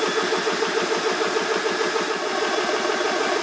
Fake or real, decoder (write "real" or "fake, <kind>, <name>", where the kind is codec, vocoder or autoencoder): real